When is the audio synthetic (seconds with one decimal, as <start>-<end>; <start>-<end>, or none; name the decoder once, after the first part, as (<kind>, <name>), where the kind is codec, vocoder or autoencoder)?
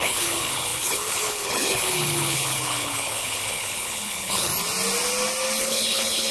0.0-4.5 (codec, HILCodec); 5.6-6.3